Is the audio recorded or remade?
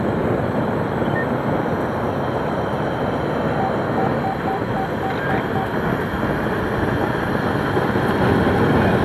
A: recorded